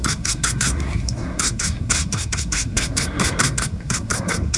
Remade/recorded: remade